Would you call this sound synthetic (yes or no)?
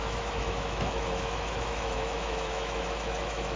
yes